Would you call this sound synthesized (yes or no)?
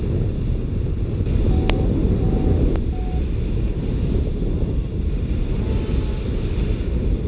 no